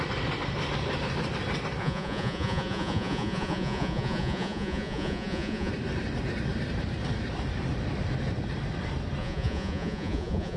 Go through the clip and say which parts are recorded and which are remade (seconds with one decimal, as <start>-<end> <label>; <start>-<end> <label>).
0.0-1.8 recorded; 1.8-5.7 remade; 5.7-9.2 recorded; 9.2-10.6 remade

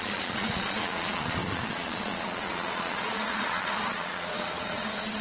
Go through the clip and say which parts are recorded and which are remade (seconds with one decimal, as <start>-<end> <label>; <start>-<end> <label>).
0.0-5.2 remade

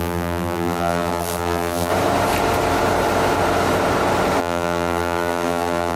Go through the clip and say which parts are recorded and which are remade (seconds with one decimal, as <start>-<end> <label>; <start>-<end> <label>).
0.0-1.9 remade; 1.9-4.4 recorded; 4.4-6.0 remade

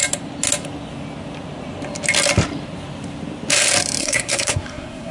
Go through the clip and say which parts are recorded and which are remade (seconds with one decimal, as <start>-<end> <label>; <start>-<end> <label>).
0.0-4.0 recorded; 4.0-5.1 remade

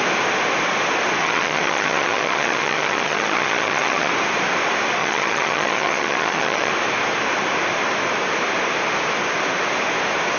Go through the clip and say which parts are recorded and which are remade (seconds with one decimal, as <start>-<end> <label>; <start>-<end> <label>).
0.0-1.2 recorded; 1.2-4.1 remade; 4.1-5.0 recorded; 5.0-6.7 remade; 6.7-10.4 recorded

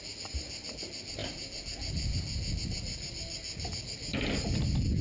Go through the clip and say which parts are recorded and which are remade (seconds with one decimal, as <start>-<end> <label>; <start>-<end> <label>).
0.0-5.0 recorded

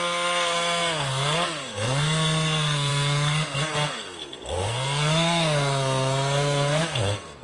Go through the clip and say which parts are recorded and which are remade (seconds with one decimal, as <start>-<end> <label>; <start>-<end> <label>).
0.0-7.4 remade